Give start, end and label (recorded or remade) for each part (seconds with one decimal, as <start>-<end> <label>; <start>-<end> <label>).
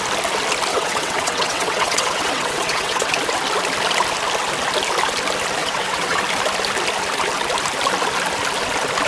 0.0-0.7 recorded; 0.7-3.1 remade; 3.1-5.6 recorded; 5.6-6.2 remade; 6.2-9.1 recorded